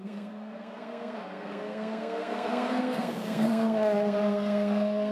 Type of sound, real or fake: fake